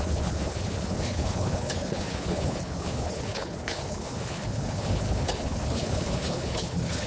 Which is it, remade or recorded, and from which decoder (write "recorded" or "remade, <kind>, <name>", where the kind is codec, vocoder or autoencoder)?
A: remade, codec, HILCodec